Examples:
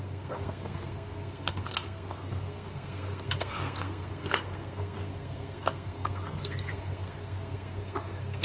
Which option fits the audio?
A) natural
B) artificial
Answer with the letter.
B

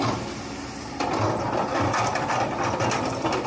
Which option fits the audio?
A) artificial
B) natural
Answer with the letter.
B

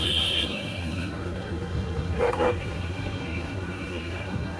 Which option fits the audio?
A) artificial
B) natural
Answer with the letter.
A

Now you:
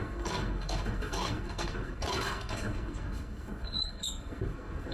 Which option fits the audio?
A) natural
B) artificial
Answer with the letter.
B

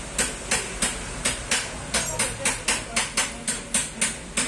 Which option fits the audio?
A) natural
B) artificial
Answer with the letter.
A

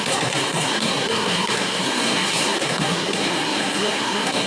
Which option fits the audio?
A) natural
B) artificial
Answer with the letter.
B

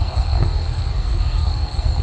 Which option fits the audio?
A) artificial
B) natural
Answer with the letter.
A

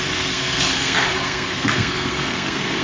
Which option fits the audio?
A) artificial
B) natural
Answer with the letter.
A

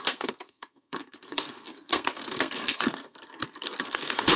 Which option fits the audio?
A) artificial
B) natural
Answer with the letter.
A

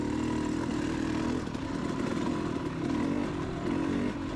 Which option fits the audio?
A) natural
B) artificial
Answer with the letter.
A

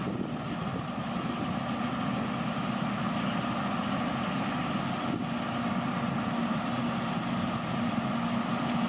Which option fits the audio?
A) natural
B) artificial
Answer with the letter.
A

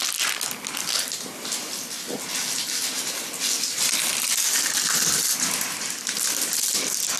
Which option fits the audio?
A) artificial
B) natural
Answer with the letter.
B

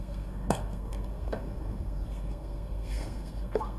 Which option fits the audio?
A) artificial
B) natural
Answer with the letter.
A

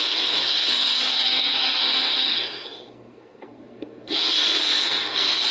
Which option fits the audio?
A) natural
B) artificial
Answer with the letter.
B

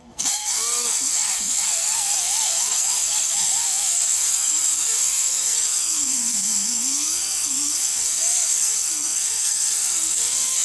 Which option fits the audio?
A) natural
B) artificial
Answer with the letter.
B